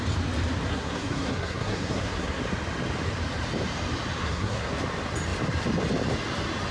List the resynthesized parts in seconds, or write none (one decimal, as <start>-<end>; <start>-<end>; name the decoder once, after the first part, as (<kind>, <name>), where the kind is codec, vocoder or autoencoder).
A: 0.7-2.4 (codec, SNAC); 4.2-4.7